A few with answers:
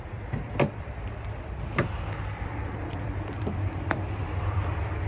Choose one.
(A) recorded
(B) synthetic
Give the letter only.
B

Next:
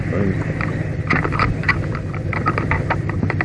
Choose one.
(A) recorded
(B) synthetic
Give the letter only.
B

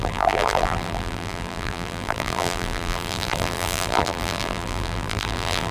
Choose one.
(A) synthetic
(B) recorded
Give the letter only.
A